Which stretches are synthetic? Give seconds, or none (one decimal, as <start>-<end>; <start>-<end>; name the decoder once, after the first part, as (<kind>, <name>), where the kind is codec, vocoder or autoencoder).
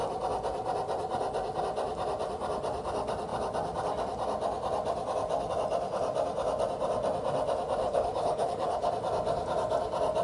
7.8-8.9 (codec, HILCodec)